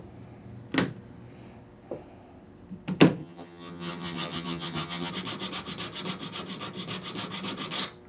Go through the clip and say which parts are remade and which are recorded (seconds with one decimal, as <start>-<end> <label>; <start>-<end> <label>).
0.0-3.2 recorded; 3.2-5.1 remade; 5.1-8.1 recorded